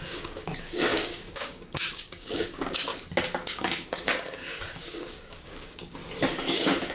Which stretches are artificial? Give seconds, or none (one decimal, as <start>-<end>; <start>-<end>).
0.0-2.9; 3.5-6.0; 6.5-6.9